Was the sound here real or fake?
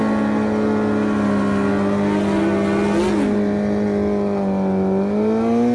real